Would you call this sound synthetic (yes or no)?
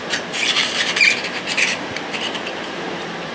yes